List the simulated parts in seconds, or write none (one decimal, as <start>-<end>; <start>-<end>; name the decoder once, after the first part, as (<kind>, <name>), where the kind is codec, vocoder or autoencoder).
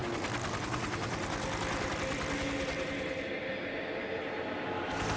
none